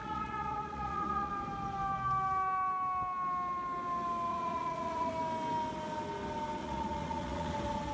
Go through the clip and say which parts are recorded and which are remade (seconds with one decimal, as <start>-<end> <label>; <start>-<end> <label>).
0.0-1.3 remade; 1.3-4.3 recorded; 4.3-5.1 remade; 5.1-6.6 recorded; 6.6-7.5 remade; 7.5-7.9 recorded